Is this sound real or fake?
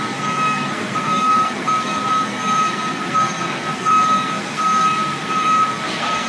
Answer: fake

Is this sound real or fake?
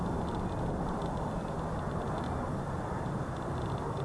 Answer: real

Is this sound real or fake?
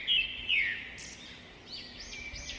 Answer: real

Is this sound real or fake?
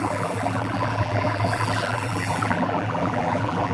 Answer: fake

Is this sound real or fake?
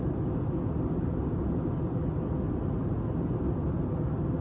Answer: real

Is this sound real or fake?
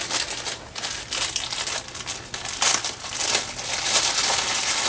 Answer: real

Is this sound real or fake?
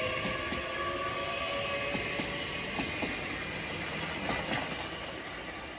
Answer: real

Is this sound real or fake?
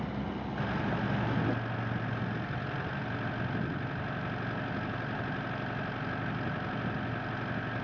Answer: real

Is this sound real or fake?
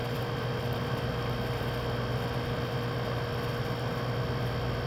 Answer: real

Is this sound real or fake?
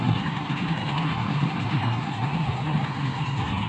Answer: fake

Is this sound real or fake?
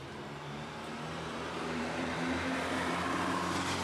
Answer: fake